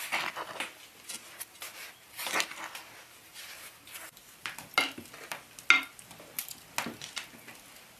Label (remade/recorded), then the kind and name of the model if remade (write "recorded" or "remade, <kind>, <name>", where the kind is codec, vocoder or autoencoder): recorded